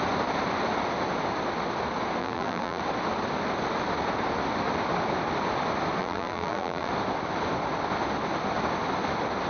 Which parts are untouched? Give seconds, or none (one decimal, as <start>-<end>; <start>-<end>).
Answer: 0.0-2.2; 2.8-6.0; 6.9-9.5